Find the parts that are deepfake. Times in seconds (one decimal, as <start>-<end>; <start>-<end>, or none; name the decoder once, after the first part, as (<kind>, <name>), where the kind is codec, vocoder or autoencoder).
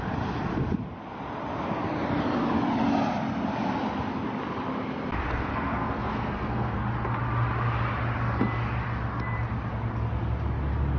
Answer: 5.5-6.8 (codec, SNAC)